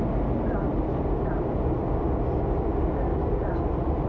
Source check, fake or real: real